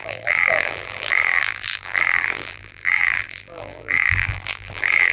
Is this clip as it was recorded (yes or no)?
no